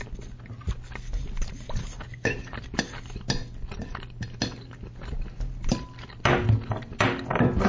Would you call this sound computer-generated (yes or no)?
no